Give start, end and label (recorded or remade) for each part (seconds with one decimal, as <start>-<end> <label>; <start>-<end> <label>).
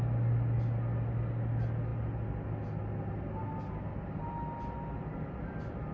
0.0-5.9 recorded